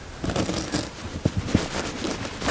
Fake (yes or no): no